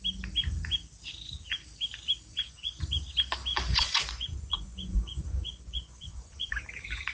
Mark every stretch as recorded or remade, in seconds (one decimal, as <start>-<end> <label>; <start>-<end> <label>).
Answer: 0.0-2.3 recorded; 2.3-3.0 remade; 3.0-3.5 recorded; 3.5-6.5 remade; 6.5-7.1 recorded